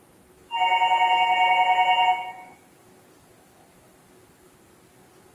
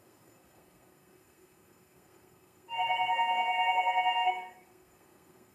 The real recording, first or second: first